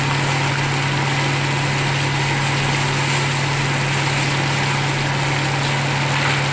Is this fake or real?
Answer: real